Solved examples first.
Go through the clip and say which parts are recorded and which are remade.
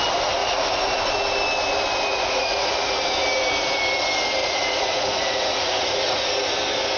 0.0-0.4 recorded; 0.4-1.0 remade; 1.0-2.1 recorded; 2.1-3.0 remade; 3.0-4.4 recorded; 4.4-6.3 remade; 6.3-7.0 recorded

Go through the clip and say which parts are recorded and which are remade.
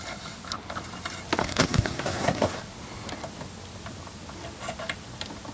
0.0-1.4 recorded; 1.4-2.6 remade; 2.6-5.5 recorded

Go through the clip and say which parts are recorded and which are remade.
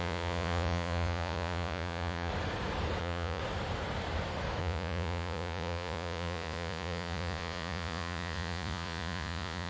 0.0-2.3 remade; 2.3-3.0 recorded; 3.0-3.4 remade; 3.4-4.6 recorded; 4.6-9.7 remade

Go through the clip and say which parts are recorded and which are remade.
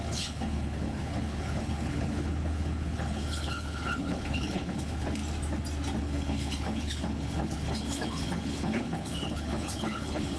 0.0-5.2 remade; 5.2-6.0 recorded; 6.0-10.4 remade